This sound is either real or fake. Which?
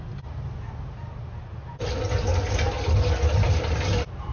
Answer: real